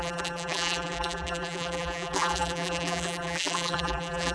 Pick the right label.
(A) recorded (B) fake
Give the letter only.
B